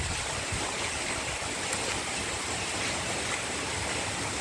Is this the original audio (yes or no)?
yes